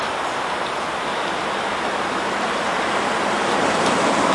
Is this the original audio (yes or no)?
yes